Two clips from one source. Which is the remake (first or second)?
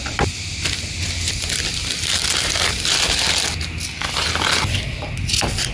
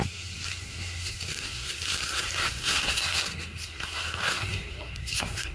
second